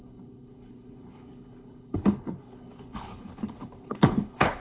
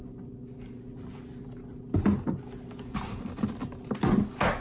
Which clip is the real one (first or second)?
second